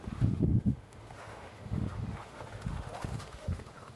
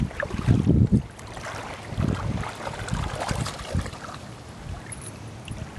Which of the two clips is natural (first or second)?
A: second